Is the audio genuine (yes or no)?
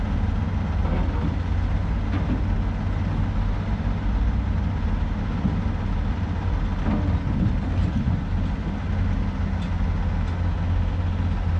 yes